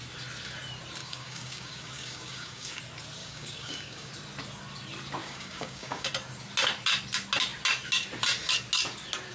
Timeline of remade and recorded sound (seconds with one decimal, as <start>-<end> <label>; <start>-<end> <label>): 0.0-1.0 recorded; 1.0-2.8 remade; 2.8-3.2 recorded; 3.2-4.1 remade; 4.1-5.2 recorded; 5.2-6.1 remade; 6.1-9.3 recorded